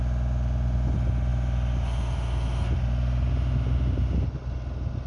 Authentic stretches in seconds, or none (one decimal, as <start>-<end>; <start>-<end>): 0.0-5.1